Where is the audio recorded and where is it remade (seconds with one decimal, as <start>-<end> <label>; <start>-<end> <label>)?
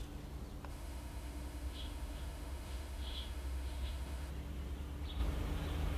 0.0-0.7 recorded; 0.7-4.3 remade; 4.3-6.0 recorded